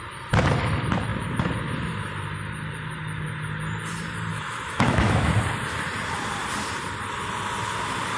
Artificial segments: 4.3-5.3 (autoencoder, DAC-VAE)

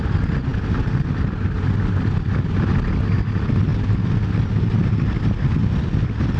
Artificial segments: none

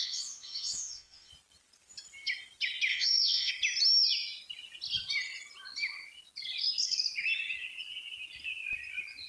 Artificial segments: 0.0-1.3 (vocoder, Vocos); 2.9-3.5